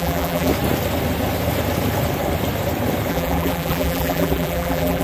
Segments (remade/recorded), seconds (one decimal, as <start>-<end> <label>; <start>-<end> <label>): 0.0-0.5 remade; 0.5-3.1 recorded; 3.1-5.0 remade